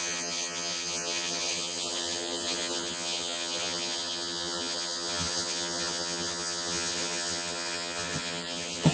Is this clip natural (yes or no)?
no